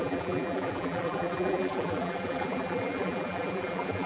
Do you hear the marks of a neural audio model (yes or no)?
yes